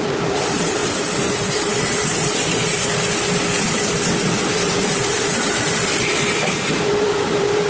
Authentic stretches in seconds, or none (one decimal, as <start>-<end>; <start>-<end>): 2.7-4.2